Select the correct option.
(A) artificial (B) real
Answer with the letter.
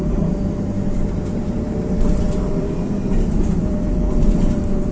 A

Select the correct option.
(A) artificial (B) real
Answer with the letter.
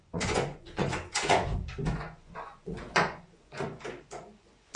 A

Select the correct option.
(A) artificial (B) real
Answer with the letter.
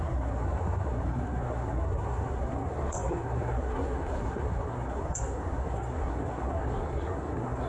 A